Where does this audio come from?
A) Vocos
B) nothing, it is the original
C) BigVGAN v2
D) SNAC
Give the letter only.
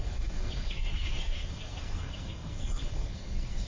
D